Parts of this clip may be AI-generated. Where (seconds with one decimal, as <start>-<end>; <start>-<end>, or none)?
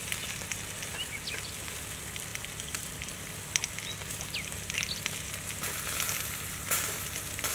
2.3-3.3